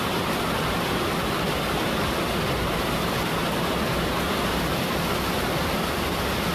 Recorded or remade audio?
recorded